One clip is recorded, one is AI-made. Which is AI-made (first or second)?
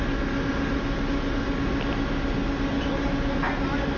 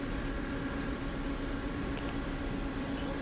second